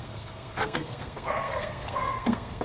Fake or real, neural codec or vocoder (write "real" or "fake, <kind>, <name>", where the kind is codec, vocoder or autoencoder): fake, codec, SNAC